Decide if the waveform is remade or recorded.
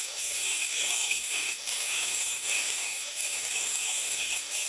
remade